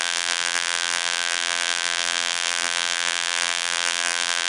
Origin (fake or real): fake